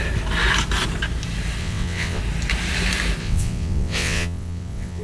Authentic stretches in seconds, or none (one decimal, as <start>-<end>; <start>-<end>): 0.0-1.6; 2.2-3.2